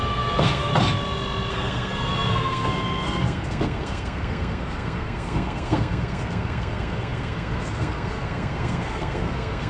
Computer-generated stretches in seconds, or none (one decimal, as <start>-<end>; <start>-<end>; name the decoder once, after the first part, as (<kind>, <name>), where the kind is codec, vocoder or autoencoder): 0.0-0.7 (codec, SNAC); 1.5-9.7